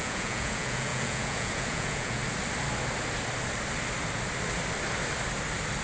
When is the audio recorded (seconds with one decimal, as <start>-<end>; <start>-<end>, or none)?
2.2-5.8

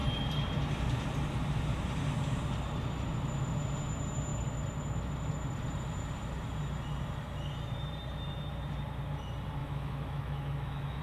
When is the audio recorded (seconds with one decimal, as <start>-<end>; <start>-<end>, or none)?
0.0-9.6